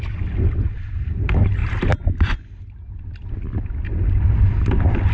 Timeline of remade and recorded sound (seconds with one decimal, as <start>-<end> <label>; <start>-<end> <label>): 0.0-5.1 recorded